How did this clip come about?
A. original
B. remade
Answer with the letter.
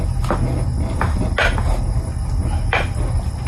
A